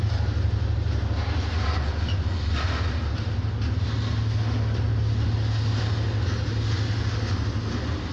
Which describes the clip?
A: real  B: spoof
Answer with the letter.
A